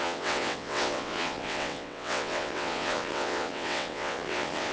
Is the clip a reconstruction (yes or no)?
yes